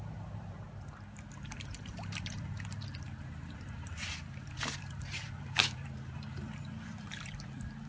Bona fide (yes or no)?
no